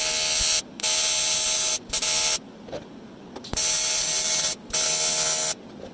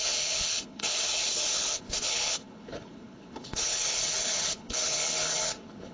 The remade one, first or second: second